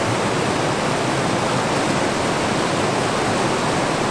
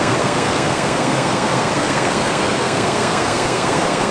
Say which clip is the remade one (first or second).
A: second